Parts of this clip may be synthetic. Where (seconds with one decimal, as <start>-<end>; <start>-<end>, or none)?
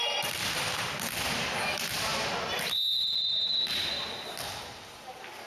none